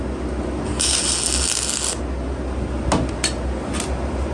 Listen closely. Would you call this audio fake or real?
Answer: real